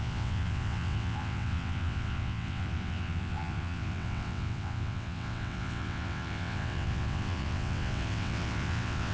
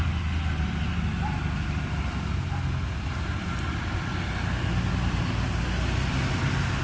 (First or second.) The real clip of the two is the second